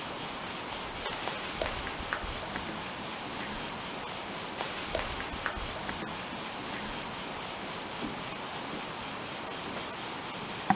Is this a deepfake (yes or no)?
no